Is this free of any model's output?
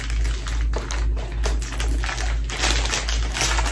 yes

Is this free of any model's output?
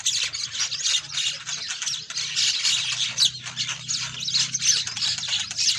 yes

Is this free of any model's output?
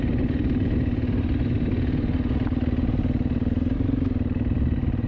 yes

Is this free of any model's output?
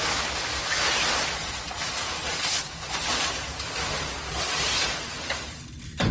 yes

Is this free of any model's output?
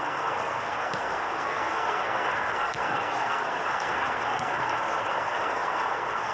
no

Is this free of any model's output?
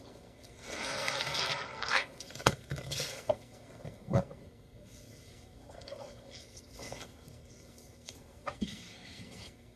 no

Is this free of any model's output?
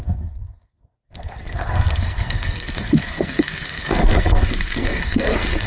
no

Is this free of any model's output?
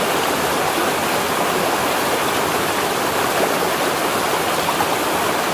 yes